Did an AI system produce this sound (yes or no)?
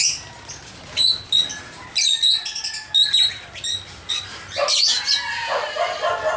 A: no